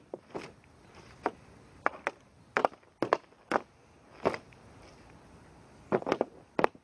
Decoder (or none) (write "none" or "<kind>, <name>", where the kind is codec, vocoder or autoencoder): none